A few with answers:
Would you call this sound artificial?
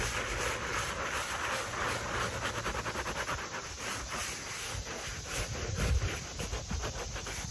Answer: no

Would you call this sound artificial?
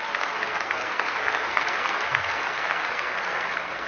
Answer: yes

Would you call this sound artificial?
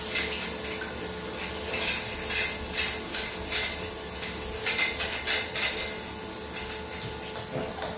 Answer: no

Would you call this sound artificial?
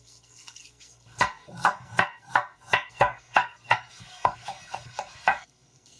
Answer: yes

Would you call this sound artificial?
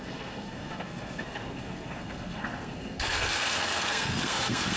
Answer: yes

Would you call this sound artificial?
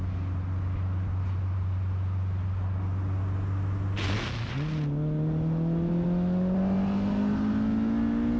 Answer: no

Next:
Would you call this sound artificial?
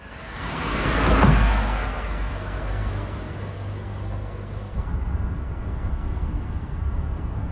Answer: yes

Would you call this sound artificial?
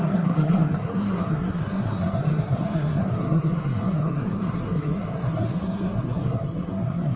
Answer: yes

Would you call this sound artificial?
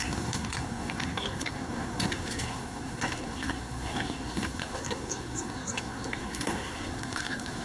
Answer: yes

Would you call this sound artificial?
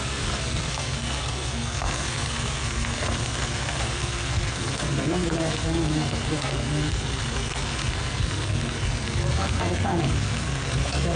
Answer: yes